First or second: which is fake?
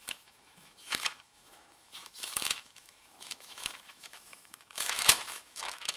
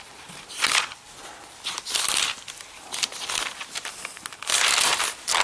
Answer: first